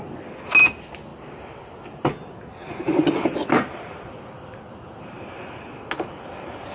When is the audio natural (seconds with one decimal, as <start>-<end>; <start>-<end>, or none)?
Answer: 0.0-6.7